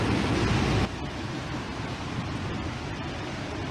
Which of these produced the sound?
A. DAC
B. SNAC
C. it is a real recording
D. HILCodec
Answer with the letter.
C